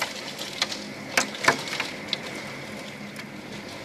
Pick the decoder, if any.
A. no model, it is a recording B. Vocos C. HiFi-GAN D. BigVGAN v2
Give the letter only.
A